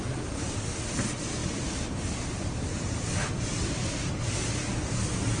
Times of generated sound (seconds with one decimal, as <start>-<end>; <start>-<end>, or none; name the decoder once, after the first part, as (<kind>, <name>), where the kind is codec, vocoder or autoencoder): 1.4-4.6 (vocoder, BigVGAN v2)